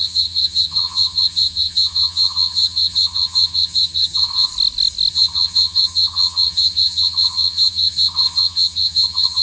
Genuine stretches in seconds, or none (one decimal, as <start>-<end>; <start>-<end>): 4.5-5.1